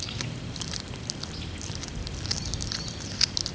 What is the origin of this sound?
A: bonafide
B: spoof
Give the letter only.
A